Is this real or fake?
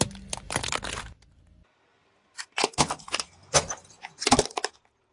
real